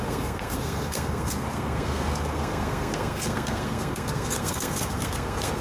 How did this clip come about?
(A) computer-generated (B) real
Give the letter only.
A